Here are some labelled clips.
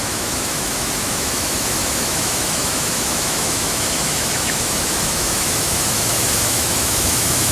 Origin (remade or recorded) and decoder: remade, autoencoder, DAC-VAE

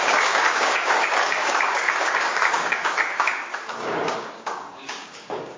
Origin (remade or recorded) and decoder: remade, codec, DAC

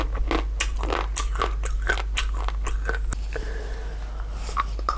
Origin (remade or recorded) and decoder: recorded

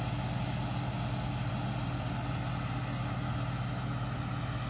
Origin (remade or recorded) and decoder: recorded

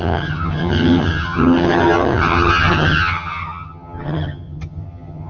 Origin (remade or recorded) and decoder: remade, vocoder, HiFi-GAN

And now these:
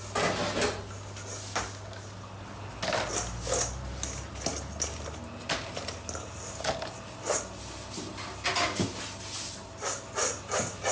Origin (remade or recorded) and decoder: recorded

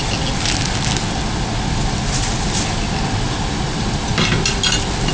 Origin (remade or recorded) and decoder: recorded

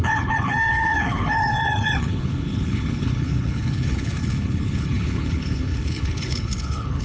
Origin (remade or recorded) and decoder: remade, codec, HILCodec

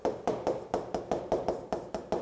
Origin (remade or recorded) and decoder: recorded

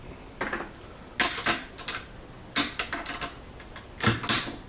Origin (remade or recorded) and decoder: recorded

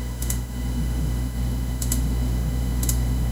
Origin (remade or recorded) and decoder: remade, autoencoder, DAC-VAE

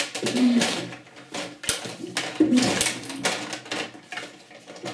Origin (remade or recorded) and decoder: recorded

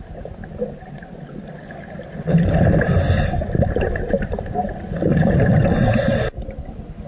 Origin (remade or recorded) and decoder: recorded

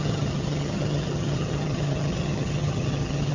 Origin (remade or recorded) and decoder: remade, vocoder, HiFi-GAN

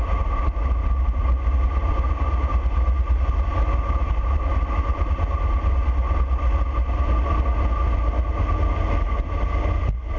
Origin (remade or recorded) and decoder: recorded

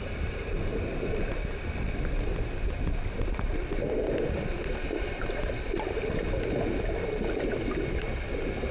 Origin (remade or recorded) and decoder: recorded